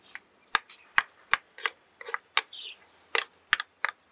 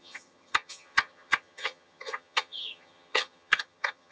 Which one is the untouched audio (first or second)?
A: first